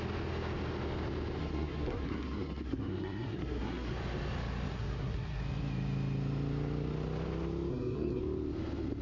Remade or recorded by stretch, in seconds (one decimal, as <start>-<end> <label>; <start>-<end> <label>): 0.0-1.4 recorded; 1.4-3.9 remade; 3.9-4.7 recorded; 4.7-5.4 remade; 5.4-7.7 recorded; 7.7-8.2 remade; 8.2-9.0 recorded